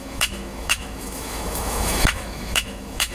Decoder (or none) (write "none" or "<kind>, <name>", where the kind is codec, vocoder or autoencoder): autoencoder, DAC-VAE